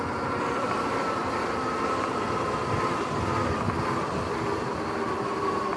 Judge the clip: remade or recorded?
recorded